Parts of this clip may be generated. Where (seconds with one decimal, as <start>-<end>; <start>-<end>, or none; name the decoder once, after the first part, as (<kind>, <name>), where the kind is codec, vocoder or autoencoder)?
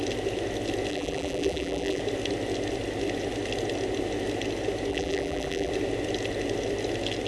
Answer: 0.9-2.0 (vocoder, BigVGAN v2); 4.9-5.7